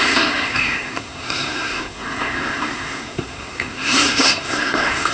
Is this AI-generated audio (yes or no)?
yes